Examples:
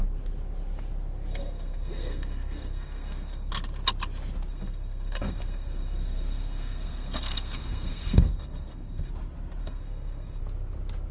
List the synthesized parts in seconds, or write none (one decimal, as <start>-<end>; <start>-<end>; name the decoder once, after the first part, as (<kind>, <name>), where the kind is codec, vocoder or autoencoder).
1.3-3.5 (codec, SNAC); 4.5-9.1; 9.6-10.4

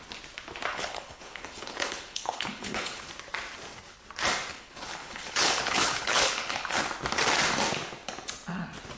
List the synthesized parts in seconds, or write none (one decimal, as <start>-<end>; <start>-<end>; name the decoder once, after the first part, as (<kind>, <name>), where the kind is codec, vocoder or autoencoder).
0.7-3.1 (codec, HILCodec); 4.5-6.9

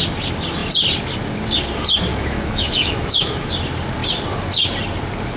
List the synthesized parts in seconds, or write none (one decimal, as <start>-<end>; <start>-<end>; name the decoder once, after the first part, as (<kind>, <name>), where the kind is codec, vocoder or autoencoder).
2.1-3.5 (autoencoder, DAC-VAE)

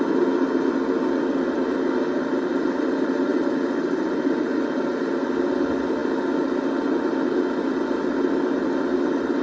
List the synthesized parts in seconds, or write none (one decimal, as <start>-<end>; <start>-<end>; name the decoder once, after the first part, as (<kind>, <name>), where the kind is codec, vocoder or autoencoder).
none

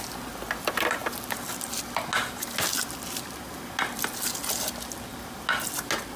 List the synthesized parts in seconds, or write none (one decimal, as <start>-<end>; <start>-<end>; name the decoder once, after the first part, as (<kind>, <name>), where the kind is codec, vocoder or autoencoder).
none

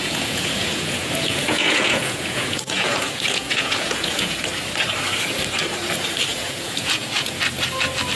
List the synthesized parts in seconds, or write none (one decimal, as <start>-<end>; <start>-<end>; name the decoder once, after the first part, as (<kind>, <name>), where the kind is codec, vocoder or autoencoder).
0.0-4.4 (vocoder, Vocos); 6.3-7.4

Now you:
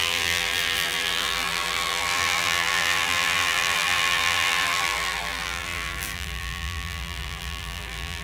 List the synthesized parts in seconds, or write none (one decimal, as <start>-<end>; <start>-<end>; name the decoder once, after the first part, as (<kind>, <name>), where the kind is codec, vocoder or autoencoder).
0.0-8.2 (vocoder, BigVGAN v2)